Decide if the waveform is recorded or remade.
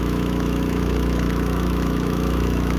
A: remade